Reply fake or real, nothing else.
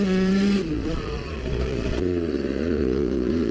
fake